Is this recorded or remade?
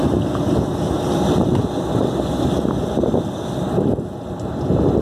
recorded